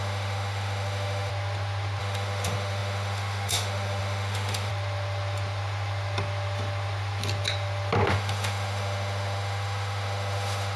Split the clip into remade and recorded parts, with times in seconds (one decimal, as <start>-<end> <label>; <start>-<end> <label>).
0.0-1.3 remade; 1.3-2.0 recorded; 2.0-4.7 remade; 4.7-8.1 recorded; 8.1-10.8 remade